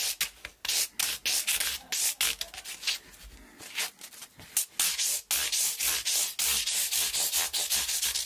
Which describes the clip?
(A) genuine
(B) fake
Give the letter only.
A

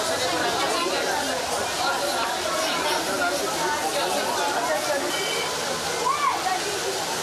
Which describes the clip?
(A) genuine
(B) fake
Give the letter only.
A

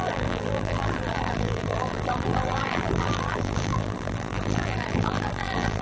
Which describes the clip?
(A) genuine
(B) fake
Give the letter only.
B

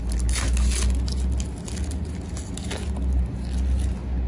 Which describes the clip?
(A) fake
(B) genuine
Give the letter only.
B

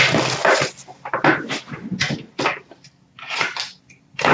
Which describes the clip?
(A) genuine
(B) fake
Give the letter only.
A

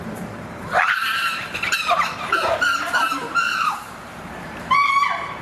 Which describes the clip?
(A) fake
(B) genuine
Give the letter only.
A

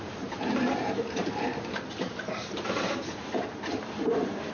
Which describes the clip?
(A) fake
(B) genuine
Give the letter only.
A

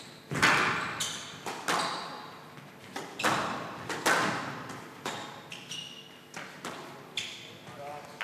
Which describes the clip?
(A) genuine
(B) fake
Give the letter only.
A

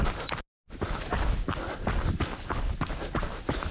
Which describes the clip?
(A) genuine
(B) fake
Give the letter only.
A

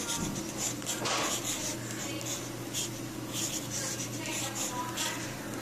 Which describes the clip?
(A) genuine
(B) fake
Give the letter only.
A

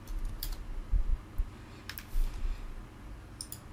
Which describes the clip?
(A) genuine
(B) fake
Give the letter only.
A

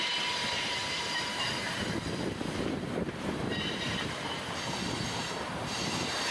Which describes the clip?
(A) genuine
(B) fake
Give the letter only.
B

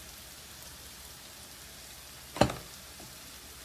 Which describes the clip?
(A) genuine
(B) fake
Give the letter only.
A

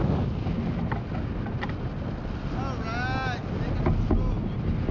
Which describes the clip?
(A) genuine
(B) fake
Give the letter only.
A